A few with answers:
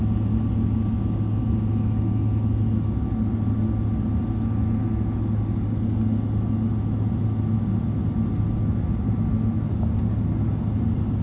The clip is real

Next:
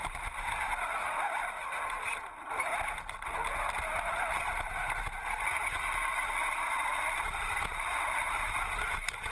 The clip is real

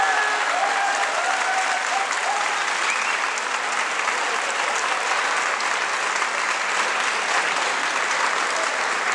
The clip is real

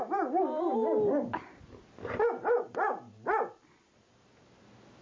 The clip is real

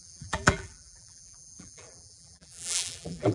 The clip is fake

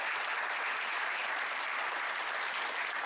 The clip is fake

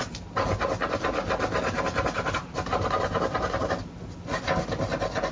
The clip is real